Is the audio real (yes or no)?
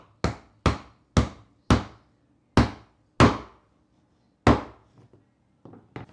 yes